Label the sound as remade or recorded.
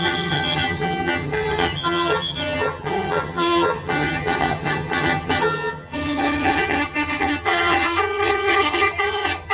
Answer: remade